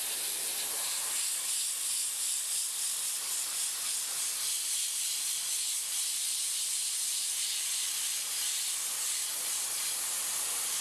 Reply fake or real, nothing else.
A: real